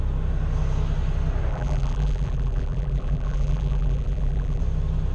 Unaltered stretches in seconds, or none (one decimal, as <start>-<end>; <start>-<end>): 0.0-1.5; 4.6-5.1